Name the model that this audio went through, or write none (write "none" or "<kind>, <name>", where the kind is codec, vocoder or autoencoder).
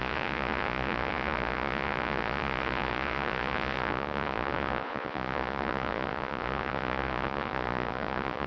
vocoder, Vocos